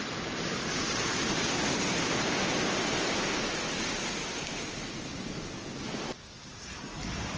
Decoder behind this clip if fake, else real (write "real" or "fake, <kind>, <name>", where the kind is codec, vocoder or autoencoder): real